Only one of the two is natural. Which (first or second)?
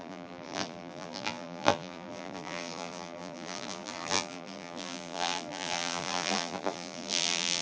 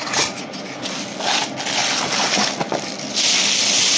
second